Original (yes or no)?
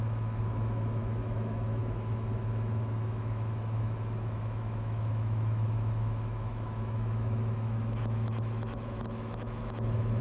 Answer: no